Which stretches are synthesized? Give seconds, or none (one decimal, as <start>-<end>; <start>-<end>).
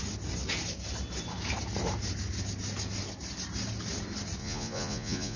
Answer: 4.4-5.4